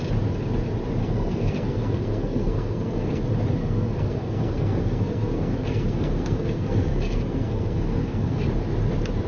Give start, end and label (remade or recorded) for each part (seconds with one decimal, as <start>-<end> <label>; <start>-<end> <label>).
0.0-1.0 recorded; 1.0-3.2 remade; 3.2-3.6 recorded; 3.6-8.4 remade; 8.4-9.3 recorded